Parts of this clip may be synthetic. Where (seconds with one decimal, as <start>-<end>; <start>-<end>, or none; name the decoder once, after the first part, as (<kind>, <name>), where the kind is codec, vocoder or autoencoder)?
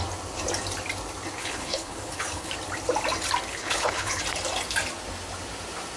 1.4-2.5 (codec, HILCodec); 3.5-4.2